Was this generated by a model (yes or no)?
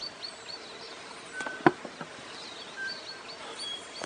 no